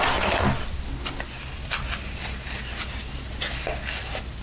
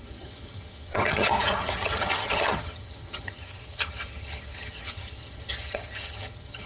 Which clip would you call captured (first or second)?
first